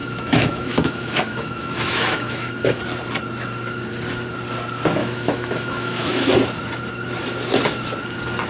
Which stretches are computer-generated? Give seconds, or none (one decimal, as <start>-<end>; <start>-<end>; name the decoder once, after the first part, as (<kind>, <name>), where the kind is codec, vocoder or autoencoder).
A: 0.0-2.8 (autoencoder, DAC-VAE); 5.0-6.3